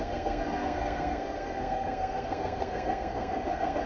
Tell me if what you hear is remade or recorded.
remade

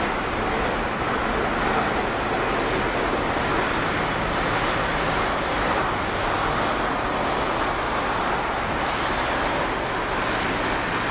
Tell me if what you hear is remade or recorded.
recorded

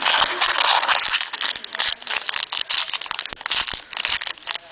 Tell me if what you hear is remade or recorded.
recorded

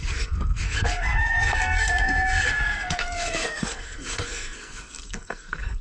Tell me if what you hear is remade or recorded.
remade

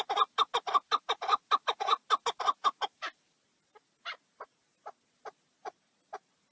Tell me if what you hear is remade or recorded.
recorded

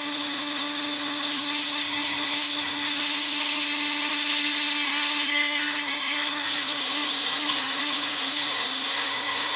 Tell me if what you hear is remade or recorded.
remade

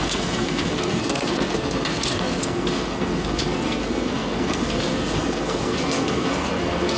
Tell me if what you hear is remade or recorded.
remade